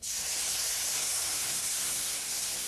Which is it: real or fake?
fake